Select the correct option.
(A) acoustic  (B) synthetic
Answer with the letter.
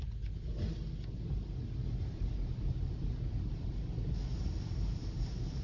A